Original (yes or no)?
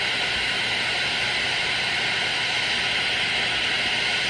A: yes